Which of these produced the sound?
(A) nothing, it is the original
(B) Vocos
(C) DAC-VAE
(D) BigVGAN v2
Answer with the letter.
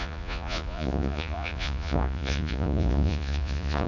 B